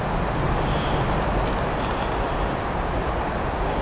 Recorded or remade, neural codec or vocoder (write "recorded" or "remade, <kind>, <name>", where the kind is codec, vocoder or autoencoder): recorded